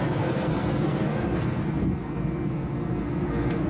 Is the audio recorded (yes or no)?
no